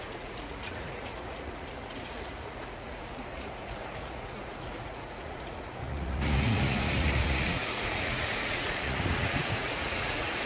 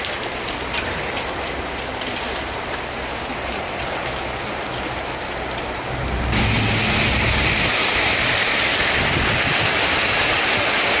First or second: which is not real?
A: first